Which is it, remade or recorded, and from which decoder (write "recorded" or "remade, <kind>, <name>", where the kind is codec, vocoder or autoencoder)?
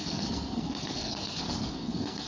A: remade, codec, SNAC